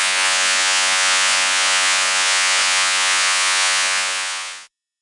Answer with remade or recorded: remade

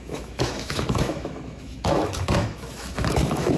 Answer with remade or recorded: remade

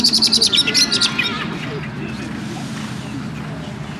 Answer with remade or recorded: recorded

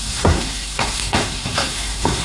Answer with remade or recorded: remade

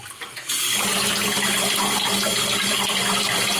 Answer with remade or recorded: recorded